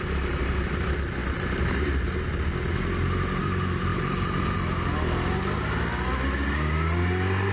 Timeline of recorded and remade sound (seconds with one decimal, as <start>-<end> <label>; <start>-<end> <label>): 0.0-3.9 recorded; 3.9-4.6 remade; 4.6-7.5 recorded